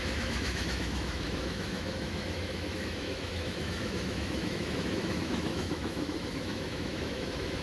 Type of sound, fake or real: fake